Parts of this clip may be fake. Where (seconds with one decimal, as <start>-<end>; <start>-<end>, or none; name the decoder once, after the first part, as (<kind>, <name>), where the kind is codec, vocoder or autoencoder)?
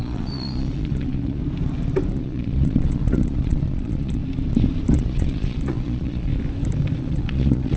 0.0-1.4 (vocoder, Vocos); 2.1-4.2; 4.9-6.3; 7.0-7.8